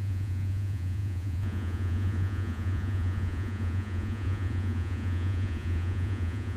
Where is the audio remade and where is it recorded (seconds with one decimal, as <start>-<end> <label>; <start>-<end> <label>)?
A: 0.0-6.6 remade